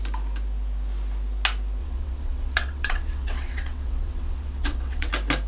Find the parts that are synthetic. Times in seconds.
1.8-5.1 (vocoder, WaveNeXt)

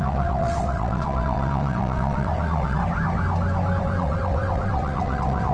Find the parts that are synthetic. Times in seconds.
0.0-2.8 (vocoder, WaveNeXt); 3.8-5.5